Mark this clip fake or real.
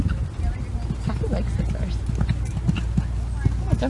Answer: real